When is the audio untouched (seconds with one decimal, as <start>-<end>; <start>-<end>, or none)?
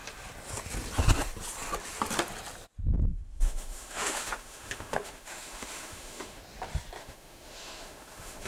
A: 0.0-3.1; 6.4-7.0